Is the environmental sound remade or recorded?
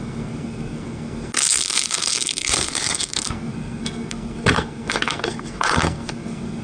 remade